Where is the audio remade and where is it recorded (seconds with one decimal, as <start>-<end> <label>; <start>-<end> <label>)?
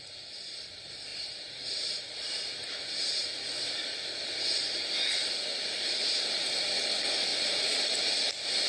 0.0-1.1 recorded; 1.1-3.3 remade; 3.3-5.5 recorded; 5.5-6.5 remade; 6.5-7.3 recorded; 7.3-7.8 remade; 7.8-8.7 recorded